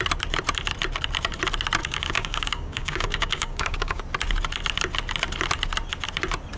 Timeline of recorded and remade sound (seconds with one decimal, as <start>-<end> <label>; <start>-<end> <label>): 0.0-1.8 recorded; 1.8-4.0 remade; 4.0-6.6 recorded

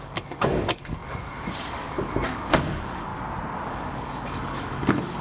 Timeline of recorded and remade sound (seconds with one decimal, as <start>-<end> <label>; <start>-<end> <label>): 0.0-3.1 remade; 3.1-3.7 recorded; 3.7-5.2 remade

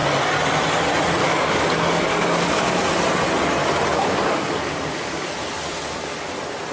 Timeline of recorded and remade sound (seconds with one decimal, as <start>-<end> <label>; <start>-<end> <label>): 0.0-1.2 recorded; 1.2-2.8 remade; 2.8-3.9 recorded; 3.9-5.3 remade; 5.3-6.7 recorded